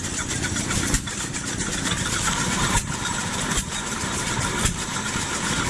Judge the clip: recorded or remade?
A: remade